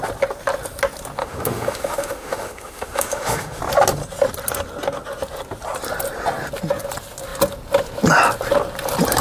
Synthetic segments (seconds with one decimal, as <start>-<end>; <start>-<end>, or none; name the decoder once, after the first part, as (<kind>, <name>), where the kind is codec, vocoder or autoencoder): 1.2-3.6 (autoencoder, DAC-VAE)